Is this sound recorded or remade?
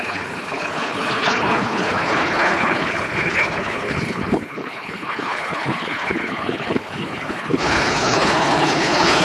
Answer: remade